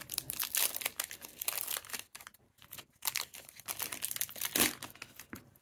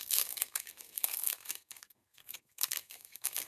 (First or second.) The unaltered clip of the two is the first